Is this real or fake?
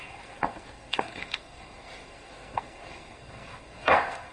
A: fake